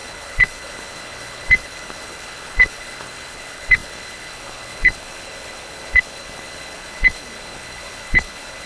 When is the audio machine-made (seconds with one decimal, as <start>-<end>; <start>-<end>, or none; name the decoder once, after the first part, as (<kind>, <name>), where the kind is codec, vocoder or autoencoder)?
0.0-8.7 (codec, HILCodec)